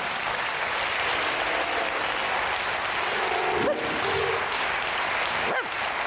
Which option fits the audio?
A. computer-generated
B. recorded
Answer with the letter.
B